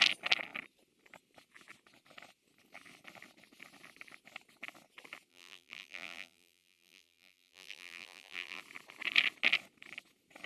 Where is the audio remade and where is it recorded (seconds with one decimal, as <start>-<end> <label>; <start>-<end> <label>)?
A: 0.0-5.3 recorded; 5.3-8.6 remade; 8.6-10.5 recorded